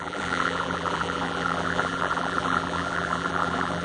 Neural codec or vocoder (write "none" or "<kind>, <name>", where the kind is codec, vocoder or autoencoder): vocoder, BigVGAN v2